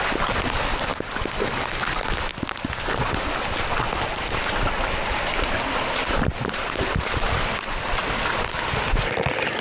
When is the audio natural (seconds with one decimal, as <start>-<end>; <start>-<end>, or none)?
0.9-1.8; 2.3-6.9